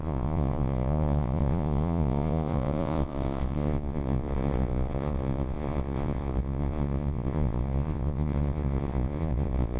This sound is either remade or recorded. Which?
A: remade